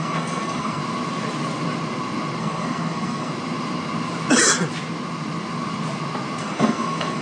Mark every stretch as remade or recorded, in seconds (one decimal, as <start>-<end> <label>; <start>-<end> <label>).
0.0-0.8 remade; 0.8-2.4 recorded; 2.4-3.3 remade; 3.3-6.4 recorded; 6.4-7.2 remade